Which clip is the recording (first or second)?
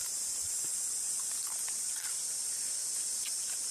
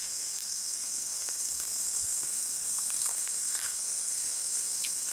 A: first